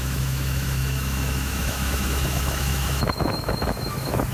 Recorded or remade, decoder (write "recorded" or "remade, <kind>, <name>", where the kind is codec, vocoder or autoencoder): remade, autoencoder, DAC-VAE